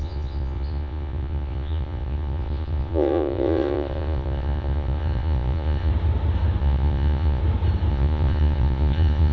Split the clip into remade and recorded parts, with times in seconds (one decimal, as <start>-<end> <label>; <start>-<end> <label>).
0.0-5.9 remade; 5.9-6.6 recorded; 6.6-7.4 remade; 7.4-7.9 recorded; 7.9-9.3 remade